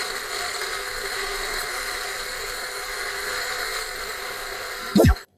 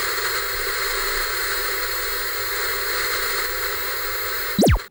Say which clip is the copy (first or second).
first